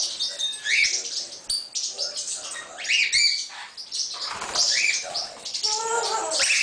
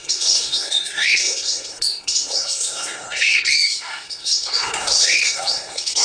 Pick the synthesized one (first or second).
second